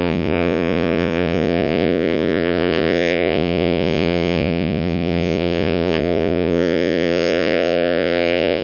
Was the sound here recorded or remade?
remade